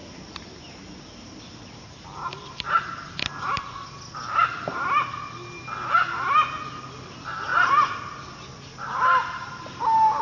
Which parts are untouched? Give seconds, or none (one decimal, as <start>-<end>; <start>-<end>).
0.0-10.2